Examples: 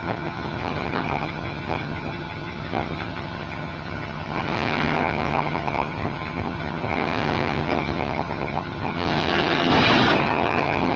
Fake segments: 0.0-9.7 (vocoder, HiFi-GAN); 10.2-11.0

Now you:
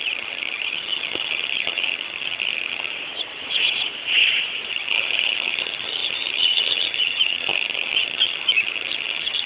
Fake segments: 0.0-2.9 (vocoder, HiFi-GAN); 4.7-9.5

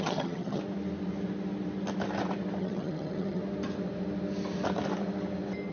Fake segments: 0.0-0.6 (vocoder, HiFi-GAN); 2.6-3.4

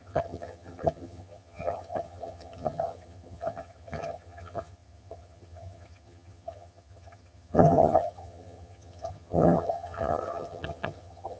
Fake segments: 0.0-11.4 (vocoder, HiFi-GAN)

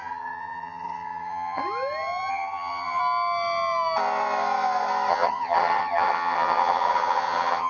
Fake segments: 0.0-1.6 (vocoder, HiFi-GAN); 2.3-3.0; 5.1-7.7